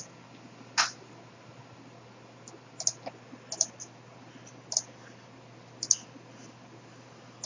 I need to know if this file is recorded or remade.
recorded